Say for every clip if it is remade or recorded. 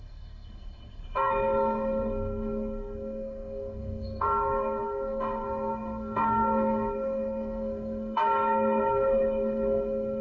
remade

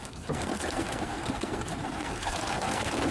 remade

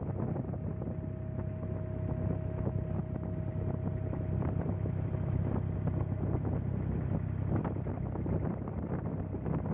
recorded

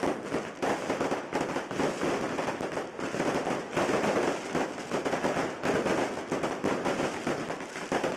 recorded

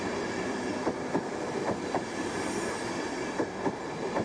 recorded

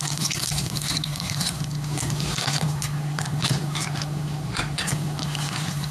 remade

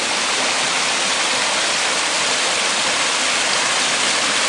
recorded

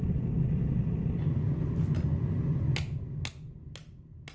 recorded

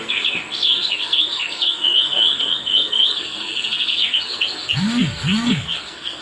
remade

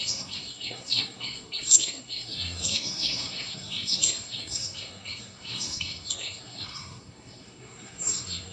remade